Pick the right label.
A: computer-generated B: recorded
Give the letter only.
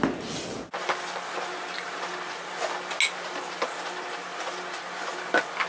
B